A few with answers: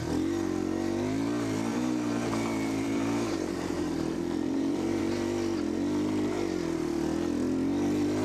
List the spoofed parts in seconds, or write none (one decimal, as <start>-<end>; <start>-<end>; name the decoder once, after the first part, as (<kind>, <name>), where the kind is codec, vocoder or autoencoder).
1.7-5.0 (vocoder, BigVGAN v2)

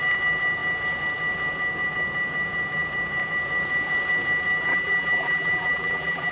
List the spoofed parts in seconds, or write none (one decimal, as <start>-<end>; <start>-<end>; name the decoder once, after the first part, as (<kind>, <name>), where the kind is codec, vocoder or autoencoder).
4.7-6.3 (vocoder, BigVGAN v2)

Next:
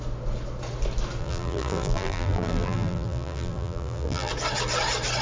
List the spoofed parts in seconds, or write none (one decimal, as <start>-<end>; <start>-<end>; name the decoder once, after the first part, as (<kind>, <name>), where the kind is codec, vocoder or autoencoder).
1.2-4.3 (vocoder, BigVGAN v2)

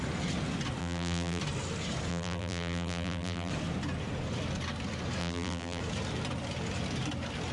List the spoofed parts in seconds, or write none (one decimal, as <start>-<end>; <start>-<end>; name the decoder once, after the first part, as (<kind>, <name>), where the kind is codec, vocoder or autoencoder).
0.8-1.4 (vocoder, BigVGAN v2); 2.1-3.5; 5.2-5.8